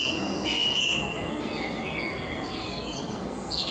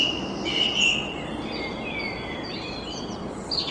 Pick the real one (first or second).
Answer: second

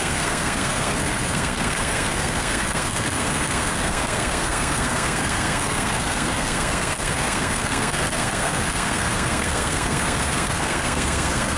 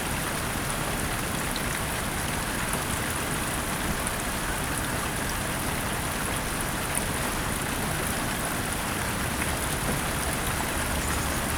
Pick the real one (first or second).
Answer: second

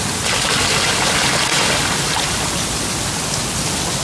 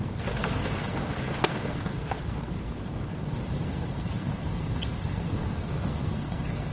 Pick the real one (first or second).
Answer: first